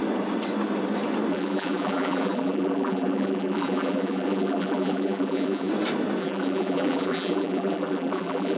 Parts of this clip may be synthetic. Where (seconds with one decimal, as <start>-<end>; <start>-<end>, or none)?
1.3-5.7; 6.2-8.6